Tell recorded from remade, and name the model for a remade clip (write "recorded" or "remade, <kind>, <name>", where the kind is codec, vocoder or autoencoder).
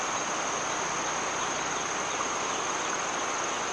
recorded